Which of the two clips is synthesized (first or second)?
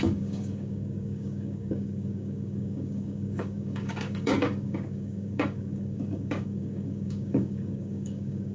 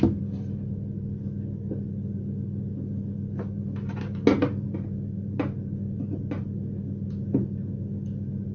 first